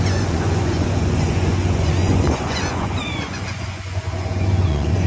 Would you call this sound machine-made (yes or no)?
yes